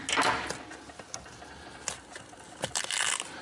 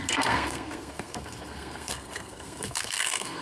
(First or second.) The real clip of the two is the first